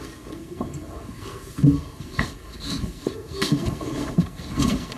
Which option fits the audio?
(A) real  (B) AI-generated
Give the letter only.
B